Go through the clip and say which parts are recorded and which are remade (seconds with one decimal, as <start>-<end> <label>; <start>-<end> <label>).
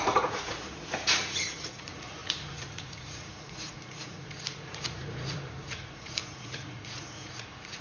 0.0-7.8 remade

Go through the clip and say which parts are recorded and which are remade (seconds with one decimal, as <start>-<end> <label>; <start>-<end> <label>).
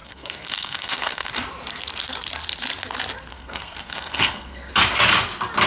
0.0-1.3 remade; 1.3-3.3 recorded; 3.3-4.7 remade; 4.7-5.7 recorded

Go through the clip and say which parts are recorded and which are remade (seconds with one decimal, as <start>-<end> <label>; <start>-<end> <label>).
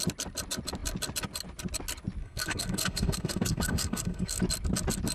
0.0-2.2 recorded; 2.2-4.4 remade; 4.4-5.1 recorded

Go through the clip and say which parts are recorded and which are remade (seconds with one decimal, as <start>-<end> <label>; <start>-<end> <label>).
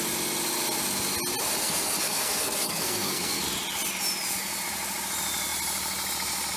0.0-1.6 recorded; 1.6-3.4 remade; 3.4-6.6 recorded